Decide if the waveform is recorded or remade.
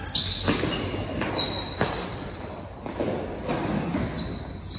recorded